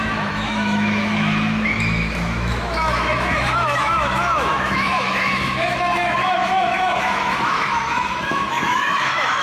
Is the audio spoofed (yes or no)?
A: yes